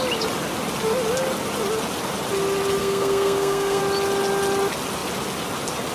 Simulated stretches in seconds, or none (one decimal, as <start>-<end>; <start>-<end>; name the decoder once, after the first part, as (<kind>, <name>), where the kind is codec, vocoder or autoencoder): 2.8-3.8 (codec, SNAC)